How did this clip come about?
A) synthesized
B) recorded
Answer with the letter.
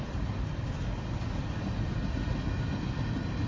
B